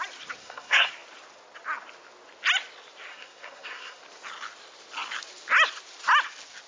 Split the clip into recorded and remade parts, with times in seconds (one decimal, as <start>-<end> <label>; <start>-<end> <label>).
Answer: 0.0-0.4 recorded; 0.4-0.9 remade; 0.9-3.1 recorded; 3.1-4.0 remade; 4.0-6.7 recorded